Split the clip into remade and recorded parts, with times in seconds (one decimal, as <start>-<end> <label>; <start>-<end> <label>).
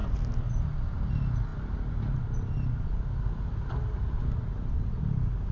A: 0.0-5.5 recorded